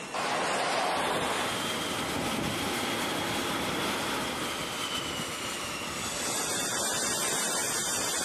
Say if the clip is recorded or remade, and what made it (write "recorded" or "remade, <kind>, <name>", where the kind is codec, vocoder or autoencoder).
recorded